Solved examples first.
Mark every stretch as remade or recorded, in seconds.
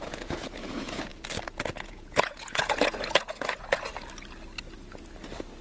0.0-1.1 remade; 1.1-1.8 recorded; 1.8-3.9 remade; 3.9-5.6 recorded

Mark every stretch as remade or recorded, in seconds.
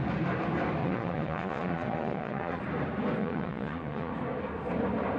0.0-0.8 recorded; 0.8-2.6 remade; 2.6-3.2 recorded; 3.2-4.1 remade; 4.1-5.2 recorded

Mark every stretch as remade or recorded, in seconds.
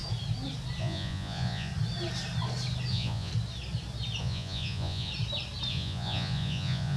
0.0-0.8 recorded; 0.8-1.7 remade; 1.7-2.9 recorded; 2.9-3.3 remade; 3.3-4.2 recorded; 4.2-5.1 remade; 5.1-5.7 recorded; 5.7-7.0 remade